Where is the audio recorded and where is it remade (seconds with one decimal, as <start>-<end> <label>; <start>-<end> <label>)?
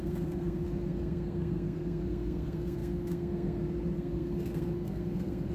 0.0-5.5 remade